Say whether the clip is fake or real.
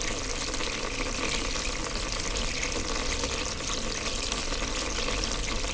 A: real